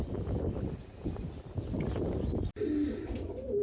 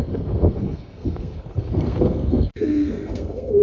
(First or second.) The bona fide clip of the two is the first